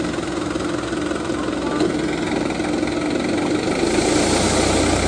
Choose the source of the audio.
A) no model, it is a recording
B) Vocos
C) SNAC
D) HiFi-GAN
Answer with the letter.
A